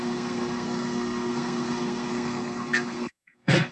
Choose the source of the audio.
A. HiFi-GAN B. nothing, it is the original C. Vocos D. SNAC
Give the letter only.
D